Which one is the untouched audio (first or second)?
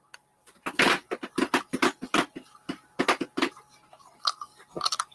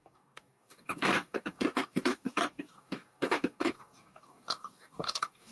first